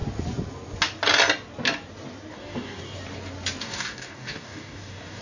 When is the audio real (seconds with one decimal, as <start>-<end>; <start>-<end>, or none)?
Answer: 0.0-2.3; 2.8-3.6